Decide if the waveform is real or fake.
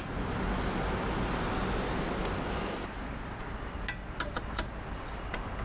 real